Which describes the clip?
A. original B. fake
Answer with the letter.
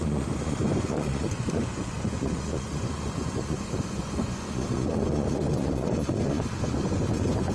B